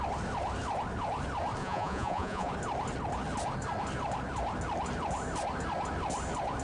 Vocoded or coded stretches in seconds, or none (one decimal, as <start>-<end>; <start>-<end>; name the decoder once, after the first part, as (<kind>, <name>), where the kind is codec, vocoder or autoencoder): 1.6-2.5 (vocoder, Vocos)